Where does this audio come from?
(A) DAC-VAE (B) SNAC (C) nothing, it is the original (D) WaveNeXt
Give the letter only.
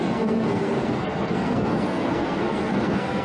B